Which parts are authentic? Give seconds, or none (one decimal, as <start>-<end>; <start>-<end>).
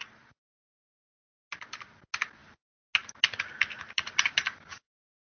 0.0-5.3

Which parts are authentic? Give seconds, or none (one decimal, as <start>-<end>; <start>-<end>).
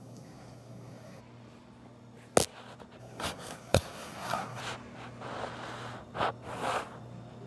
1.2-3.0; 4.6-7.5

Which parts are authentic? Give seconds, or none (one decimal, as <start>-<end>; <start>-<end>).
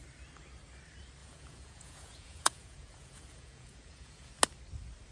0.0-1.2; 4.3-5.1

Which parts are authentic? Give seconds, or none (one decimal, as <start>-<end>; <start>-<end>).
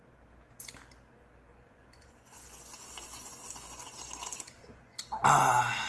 0.0-1.5; 5.0-5.9